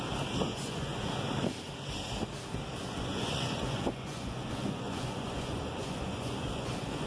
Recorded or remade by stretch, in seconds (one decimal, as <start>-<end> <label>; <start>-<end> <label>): 0.0-0.5 recorded; 0.5-1.1 remade; 1.1-2.8 recorded; 2.8-7.1 remade